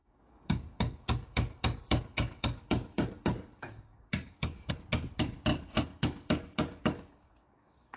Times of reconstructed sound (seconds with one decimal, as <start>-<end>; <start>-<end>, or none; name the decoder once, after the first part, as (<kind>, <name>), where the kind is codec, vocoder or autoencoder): 0.0-4.7 (codec, DAC); 5.5-8.0